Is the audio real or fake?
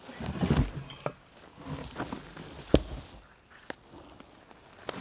real